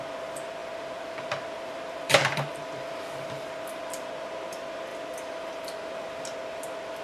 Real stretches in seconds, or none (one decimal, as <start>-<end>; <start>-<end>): 0.0-0.6; 4.1-4.9; 6.2-7.0